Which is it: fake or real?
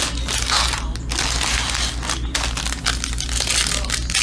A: real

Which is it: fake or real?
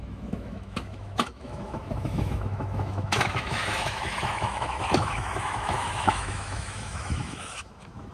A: fake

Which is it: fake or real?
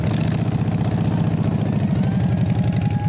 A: real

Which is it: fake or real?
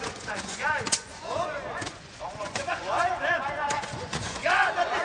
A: fake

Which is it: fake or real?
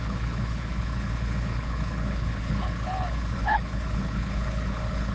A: fake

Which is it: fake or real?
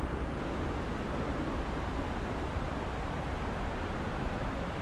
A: real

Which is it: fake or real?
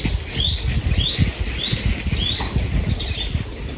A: real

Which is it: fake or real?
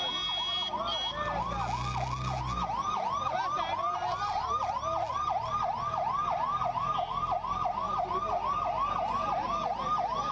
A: real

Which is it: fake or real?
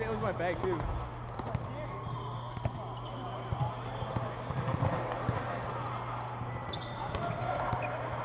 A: real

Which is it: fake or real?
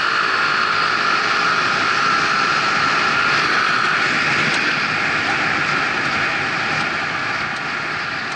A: real